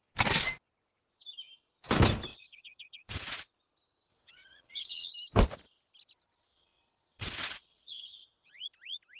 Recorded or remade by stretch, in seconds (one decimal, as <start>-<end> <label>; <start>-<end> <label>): 0.0-2.3 recorded; 2.3-3.4 remade; 3.4-4.1 recorded; 4.1-5.1 remade; 5.1-6.5 recorded; 6.5-8.6 remade; 8.6-9.2 recorded